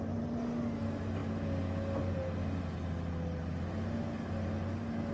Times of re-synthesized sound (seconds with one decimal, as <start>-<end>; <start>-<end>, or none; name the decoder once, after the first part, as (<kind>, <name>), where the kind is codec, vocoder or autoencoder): none